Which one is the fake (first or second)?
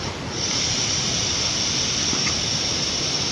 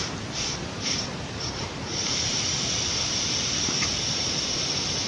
second